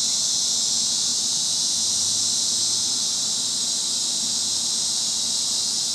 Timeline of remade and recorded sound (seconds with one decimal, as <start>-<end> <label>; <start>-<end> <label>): 0.0-5.9 recorded